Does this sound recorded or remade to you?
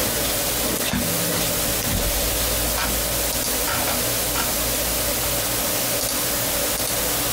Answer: recorded